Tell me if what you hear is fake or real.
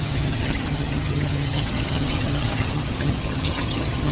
fake